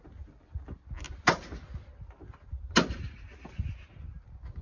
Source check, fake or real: real